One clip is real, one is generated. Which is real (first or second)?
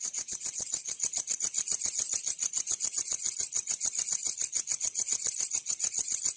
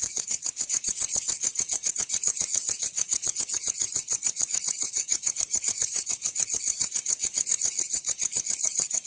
first